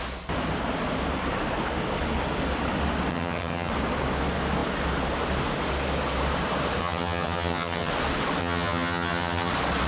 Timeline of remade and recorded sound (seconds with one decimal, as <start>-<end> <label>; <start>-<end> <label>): 0.0-3.1 recorded; 3.1-3.7 remade; 3.7-6.8 recorded; 6.8-7.9 remade; 7.9-8.4 recorded; 8.4-9.5 remade; 9.5-9.9 recorded

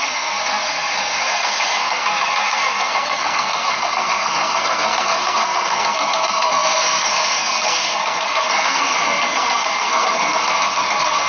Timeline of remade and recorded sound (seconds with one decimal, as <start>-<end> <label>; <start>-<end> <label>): 0.0-11.3 remade

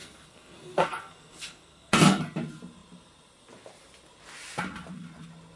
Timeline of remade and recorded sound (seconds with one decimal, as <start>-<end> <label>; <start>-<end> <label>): 0.0-2.2 remade; 2.2-5.6 recorded